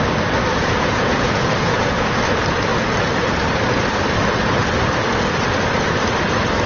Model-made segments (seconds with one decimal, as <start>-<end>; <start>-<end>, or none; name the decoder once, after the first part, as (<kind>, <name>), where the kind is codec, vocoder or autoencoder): 0.5-2.0 (vocoder, Vocos)